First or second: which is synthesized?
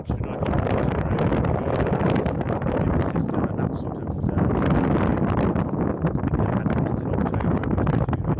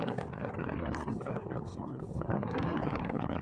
second